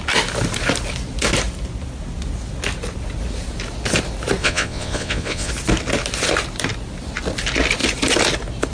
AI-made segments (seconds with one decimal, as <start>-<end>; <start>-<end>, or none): 4.4-5.5